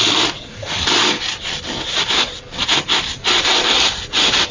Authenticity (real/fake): real